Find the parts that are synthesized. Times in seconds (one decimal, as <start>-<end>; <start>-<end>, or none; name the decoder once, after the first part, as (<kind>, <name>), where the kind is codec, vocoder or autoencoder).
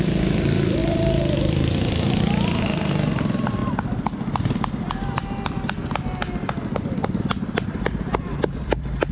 0.0-3.6 (vocoder, BigVGAN v2); 5.5-9.1